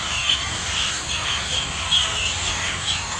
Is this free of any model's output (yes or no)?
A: no